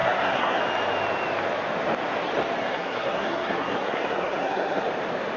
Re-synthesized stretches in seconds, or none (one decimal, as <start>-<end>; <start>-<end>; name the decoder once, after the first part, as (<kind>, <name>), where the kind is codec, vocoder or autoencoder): 0.0-0.6 (codec, SNAC); 2.6-4.9